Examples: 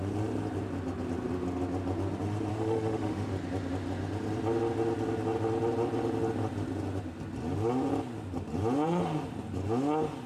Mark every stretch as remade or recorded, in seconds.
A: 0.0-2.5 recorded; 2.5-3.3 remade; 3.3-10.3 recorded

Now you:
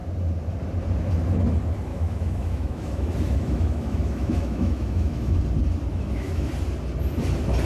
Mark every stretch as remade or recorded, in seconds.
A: 0.0-1.9 recorded; 1.9-5.4 remade; 5.4-5.9 recorded; 5.9-6.5 remade; 6.5-7.7 recorded

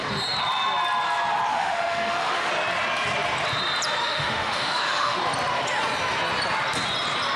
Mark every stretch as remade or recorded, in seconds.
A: 0.0-1.5 recorded; 1.5-2.5 remade; 2.5-4.0 recorded; 4.0-5.2 remade; 5.2-7.4 recorded

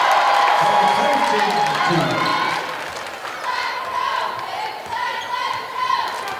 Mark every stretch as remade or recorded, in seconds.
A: 0.0-0.5 recorded; 0.5-1.2 remade; 1.2-6.4 recorded

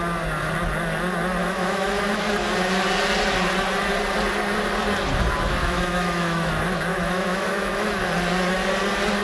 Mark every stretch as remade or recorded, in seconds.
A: 0.0-1.4 recorded; 1.4-2.0 remade; 2.0-5.6 recorded; 5.6-6.5 remade; 6.5-6.9 recorded; 6.9-7.9 remade; 7.9-9.2 recorded